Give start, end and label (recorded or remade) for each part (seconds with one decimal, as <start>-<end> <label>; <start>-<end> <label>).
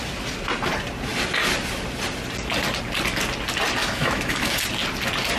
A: 0.0-3.8 recorded; 3.8-4.6 remade; 4.6-5.4 recorded